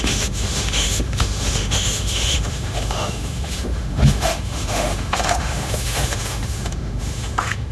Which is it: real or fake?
fake